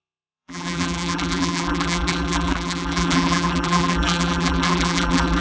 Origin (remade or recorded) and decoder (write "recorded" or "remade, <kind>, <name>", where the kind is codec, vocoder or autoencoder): remade, vocoder, BigVGAN v2